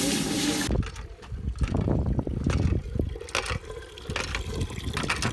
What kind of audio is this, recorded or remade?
recorded